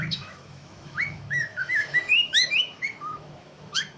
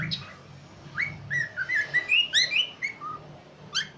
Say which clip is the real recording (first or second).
second